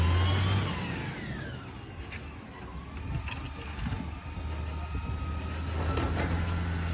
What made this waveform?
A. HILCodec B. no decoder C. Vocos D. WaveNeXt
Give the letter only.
B